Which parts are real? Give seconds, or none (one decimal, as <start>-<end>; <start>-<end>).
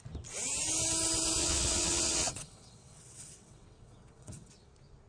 0.0-1.4; 4.5-5.1